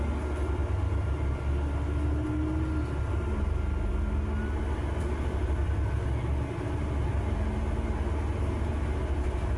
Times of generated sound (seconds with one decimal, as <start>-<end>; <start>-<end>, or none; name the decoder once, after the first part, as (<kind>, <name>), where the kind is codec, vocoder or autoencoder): none